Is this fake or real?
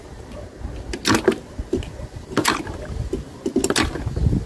real